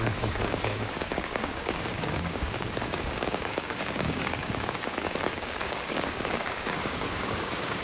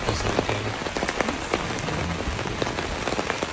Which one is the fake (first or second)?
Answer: first